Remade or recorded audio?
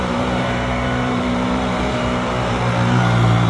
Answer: remade